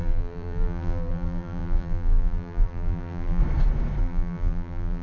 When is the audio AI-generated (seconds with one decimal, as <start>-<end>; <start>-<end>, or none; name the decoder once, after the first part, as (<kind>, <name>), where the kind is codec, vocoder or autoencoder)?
0.0-3.4 (vocoder, BigVGAN v2); 4.0-5.0